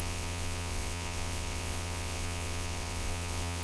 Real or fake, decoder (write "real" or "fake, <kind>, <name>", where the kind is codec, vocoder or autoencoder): fake, vocoder, WaveNeXt